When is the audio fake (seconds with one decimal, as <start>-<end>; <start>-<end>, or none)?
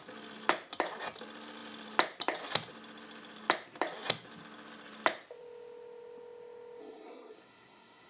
6.8-8.1